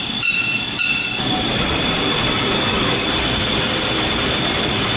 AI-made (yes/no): no